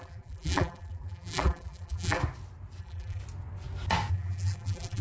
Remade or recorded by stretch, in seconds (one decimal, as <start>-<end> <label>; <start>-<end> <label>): 0.0-2.2 remade; 2.2-2.8 recorded; 2.8-3.2 remade; 3.2-4.1 recorded; 4.1-5.0 remade